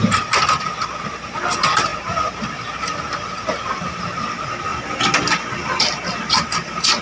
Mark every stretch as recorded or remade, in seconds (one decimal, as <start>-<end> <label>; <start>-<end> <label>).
0.0-7.0 remade